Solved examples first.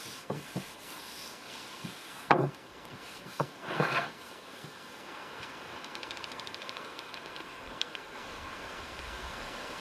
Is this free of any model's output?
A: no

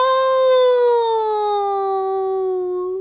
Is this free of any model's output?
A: yes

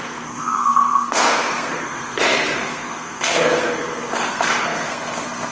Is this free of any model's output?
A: no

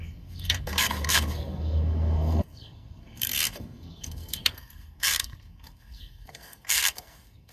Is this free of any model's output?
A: no